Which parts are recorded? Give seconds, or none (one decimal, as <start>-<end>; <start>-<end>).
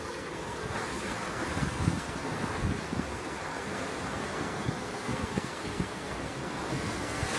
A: none